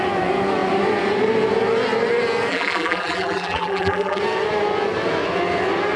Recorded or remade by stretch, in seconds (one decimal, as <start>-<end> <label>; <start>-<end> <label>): 0.0-2.5 recorded; 2.5-4.2 remade; 4.2-6.0 recorded